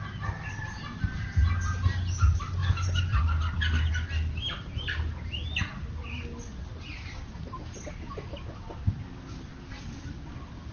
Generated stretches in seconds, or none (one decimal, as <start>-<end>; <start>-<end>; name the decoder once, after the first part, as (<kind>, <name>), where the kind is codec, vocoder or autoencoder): none